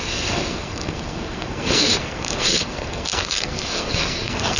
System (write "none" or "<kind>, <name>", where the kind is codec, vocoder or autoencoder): codec, SNAC